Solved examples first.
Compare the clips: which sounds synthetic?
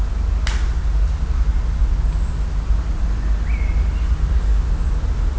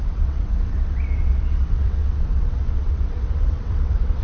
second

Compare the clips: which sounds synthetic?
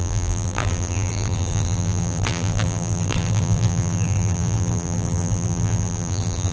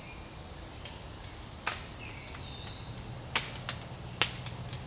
first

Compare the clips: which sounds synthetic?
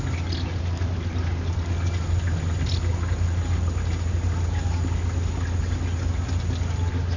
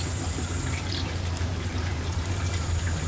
second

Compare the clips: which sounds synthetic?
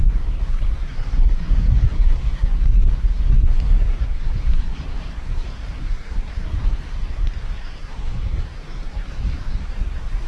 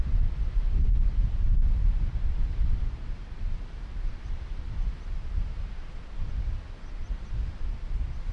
first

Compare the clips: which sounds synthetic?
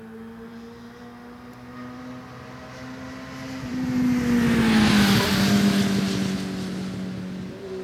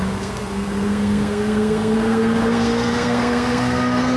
second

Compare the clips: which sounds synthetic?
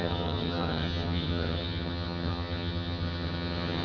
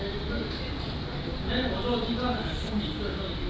first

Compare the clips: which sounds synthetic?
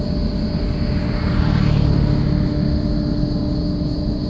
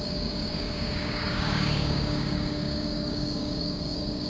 second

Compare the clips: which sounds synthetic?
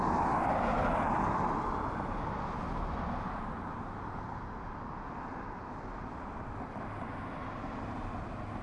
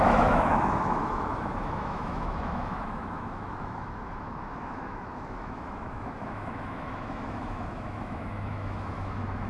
second